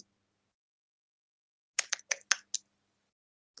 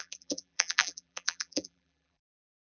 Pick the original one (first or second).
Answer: first